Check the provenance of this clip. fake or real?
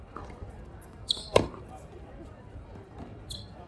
fake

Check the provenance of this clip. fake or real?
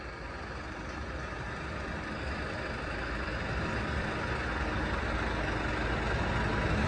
real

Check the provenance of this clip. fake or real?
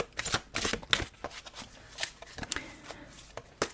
real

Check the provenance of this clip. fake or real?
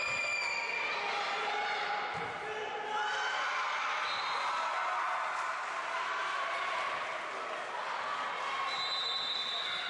real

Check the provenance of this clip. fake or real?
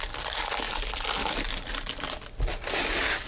real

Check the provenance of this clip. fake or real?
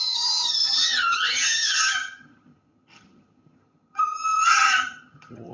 fake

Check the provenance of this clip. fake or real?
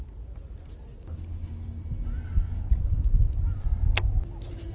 real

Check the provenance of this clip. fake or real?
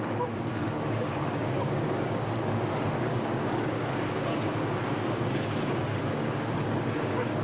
fake